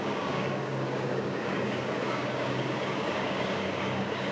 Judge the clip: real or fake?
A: fake